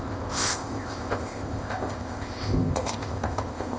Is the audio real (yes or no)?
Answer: no